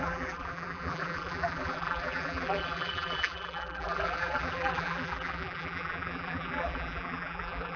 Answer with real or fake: fake